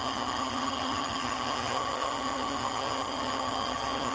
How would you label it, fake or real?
fake